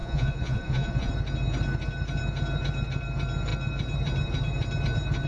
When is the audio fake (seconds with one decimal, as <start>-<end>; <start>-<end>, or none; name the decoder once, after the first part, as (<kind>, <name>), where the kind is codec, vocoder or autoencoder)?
0.0-1.1 (vocoder, Vocos)